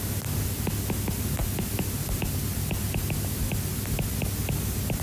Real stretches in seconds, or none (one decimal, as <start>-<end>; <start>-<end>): 0.0-5.0